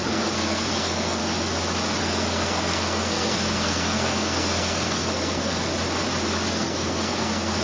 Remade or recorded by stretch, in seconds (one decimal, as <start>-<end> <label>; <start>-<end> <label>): 0.0-1.2 remade; 1.2-2.0 recorded; 2.0-5.7 remade; 5.7-6.5 recorded; 6.5-7.6 remade